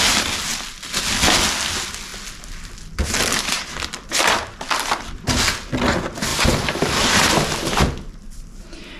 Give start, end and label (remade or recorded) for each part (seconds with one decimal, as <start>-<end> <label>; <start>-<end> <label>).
0.0-6.3 recorded; 6.3-7.1 remade; 7.1-9.0 recorded